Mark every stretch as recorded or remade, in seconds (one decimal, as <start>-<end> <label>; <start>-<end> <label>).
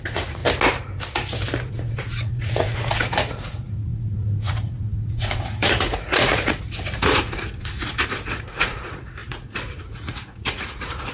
0.0-0.4 remade; 0.4-1.7 recorded; 1.7-11.1 remade